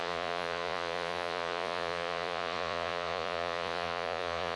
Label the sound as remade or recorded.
remade